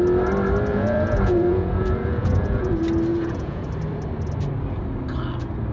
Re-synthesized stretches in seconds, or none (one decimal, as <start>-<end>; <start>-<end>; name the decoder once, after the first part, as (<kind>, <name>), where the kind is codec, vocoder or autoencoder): 0.7-2.7 (vocoder, Vocos); 3.1-3.7